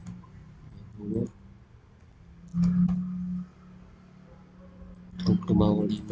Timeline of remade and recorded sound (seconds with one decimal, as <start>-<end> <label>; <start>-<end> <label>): 0.0-6.1 recorded